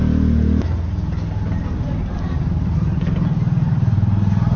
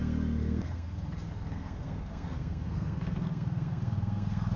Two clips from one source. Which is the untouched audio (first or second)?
first